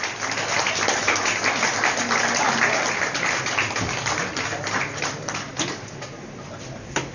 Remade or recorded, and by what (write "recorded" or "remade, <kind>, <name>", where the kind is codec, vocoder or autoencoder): recorded